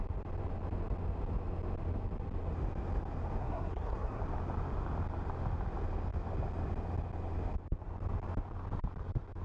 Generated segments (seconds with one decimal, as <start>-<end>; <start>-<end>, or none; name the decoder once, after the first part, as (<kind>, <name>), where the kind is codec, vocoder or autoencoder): 3.4-4.2 (codec, SNAC)